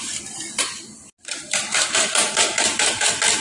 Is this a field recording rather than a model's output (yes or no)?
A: yes